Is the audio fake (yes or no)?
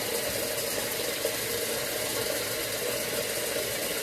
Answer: no